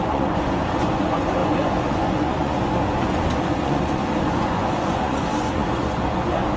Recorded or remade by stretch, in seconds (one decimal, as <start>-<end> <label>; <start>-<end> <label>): 0.0-6.6 remade

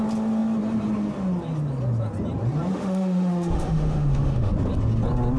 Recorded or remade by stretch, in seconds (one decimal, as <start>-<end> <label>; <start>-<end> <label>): 0.0-2.7 recorded; 2.7-4.5 remade; 4.5-5.4 recorded

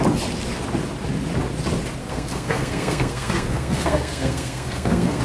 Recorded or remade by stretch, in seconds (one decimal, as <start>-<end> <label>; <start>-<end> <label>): 0.0-2.0 recorded; 2.0-5.2 remade